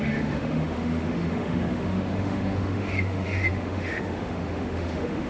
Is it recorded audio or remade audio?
remade